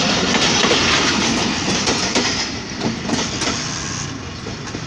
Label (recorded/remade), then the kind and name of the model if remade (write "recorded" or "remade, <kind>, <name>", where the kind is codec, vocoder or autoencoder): recorded